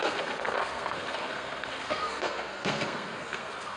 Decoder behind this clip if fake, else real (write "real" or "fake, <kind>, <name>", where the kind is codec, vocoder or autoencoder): fake, codec, SNAC